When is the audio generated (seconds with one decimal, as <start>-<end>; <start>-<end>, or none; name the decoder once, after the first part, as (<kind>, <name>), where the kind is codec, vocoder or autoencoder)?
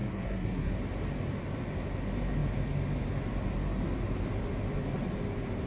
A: 0.0-0.7 (codec, SNAC)